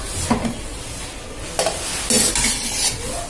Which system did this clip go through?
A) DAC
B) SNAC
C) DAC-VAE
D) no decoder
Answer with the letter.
D